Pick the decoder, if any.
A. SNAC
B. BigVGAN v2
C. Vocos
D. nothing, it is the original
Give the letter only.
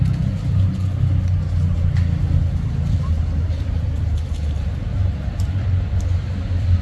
D